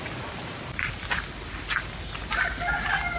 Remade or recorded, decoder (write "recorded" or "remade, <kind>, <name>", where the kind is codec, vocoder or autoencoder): recorded